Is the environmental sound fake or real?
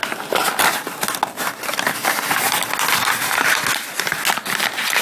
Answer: real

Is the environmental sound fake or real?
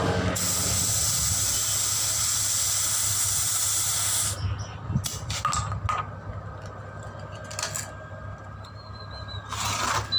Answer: real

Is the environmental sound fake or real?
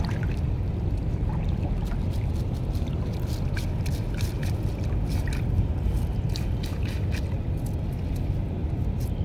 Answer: real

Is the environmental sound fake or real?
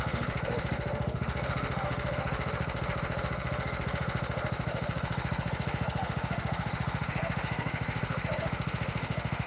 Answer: fake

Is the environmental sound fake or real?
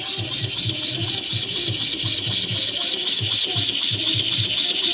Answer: real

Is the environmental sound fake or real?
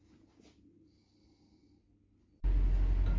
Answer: real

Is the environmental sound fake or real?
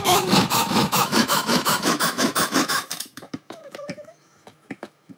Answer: fake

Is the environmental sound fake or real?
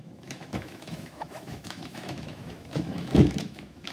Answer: fake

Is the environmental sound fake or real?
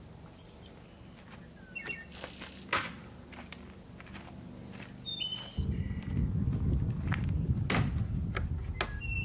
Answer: real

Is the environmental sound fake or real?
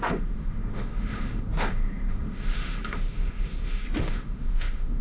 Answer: fake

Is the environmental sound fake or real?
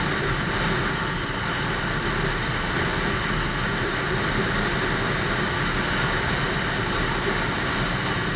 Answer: real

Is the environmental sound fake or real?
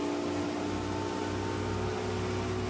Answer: real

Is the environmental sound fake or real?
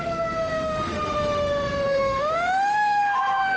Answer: fake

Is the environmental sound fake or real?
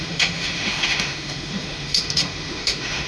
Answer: fake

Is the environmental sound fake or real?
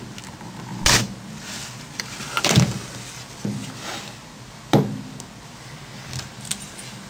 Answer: real